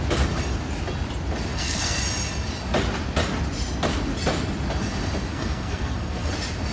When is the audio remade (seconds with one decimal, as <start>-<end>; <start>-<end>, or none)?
1.5-2.0; 5.3-6.3